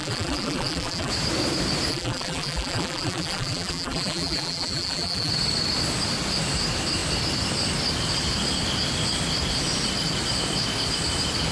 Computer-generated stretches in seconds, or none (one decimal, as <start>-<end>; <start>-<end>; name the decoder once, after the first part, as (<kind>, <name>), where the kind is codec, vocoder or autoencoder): 0.0-1.1 (vocoder, BigVGAN v2); 1.9-5.3